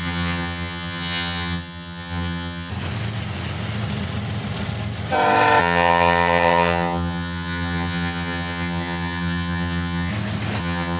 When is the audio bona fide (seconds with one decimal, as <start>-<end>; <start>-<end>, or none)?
2.7-5.6; 10.1-10.6